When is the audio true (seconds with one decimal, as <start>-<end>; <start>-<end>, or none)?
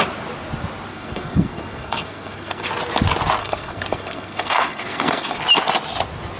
0.0-0.9; 2.7-3.4; 5.4-6.4